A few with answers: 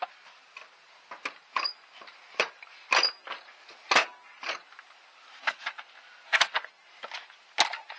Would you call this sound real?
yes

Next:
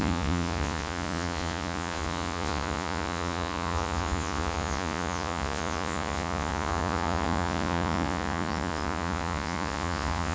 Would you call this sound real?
no